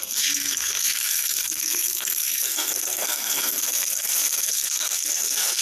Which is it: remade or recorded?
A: remade